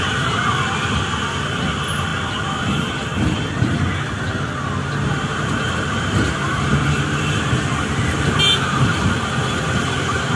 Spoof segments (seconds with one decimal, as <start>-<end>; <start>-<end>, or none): 2.1-3.9; 6.5-10.4